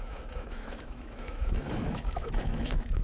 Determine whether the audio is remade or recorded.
remade